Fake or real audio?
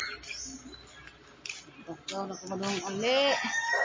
real